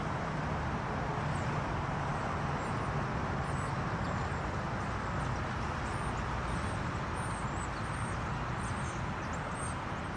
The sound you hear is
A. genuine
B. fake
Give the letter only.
A